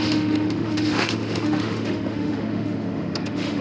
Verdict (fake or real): fake